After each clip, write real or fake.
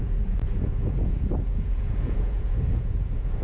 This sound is fake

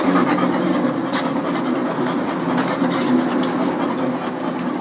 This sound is real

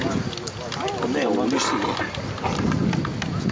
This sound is real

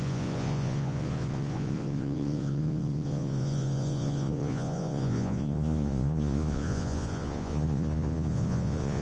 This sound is fake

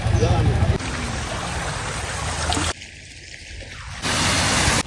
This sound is real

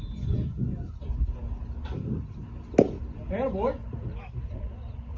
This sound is real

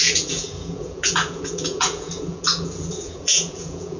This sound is fake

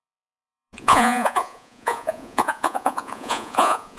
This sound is fake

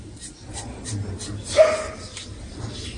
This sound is real